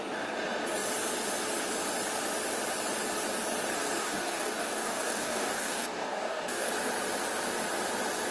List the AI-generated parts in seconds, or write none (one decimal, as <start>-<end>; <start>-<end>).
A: 4.0-6.7